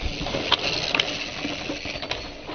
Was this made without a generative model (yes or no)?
yes